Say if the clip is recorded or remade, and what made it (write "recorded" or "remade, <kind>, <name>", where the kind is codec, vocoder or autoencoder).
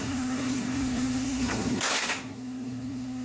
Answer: remade, codec, SNAC